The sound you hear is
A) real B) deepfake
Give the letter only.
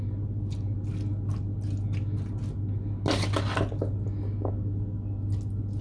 A